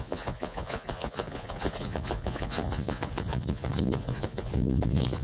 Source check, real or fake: fake